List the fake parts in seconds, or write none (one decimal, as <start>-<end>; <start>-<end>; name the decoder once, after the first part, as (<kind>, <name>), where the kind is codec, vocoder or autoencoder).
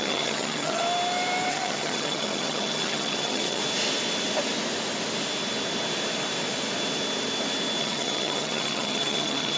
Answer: 0.0-0.8 (vocoder, HiFi-GAN); 1.5-3.6; 7.8-9.6